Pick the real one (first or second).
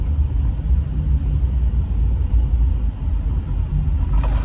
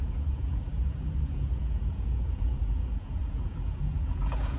first